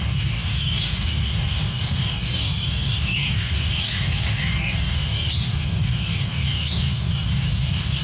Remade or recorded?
remade